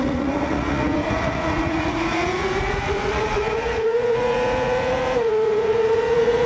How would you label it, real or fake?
fake